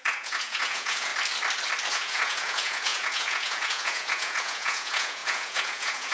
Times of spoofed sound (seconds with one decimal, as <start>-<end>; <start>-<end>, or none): 0.0-1.1; 1.9-6.1